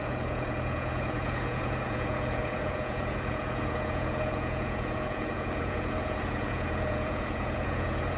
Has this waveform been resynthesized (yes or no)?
yes